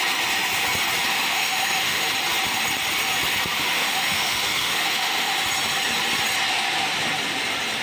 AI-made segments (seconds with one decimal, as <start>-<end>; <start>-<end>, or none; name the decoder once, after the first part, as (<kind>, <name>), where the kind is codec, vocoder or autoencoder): 1.1-2.1 (autoencoder, DAC-VAE); 3.6-5.3